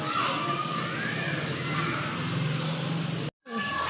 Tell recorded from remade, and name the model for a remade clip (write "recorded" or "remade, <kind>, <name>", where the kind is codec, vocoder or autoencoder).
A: recorded